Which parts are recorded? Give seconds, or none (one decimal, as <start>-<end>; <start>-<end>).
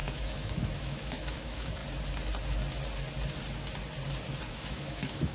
1.8-4.5